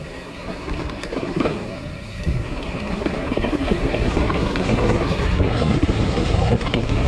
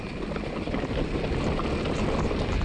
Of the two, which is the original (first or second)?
second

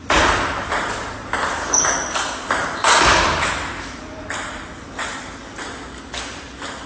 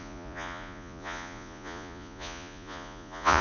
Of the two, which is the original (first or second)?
first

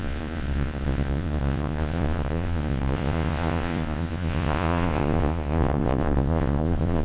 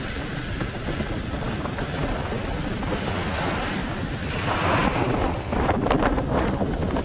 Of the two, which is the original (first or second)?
second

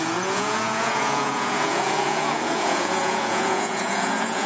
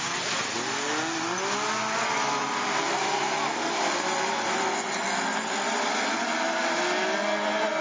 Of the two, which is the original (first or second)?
second